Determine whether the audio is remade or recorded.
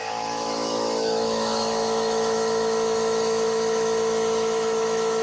remade